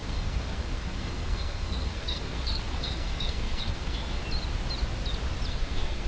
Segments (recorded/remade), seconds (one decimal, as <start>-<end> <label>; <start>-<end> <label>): 0.0-4.2 remade; 4.2-5.5 recorded; 5.5-6.1 remade

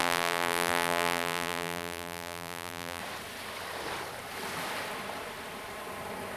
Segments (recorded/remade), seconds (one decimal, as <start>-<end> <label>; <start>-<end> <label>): 0.0-3.0 remade; 3.0-6.4 recorded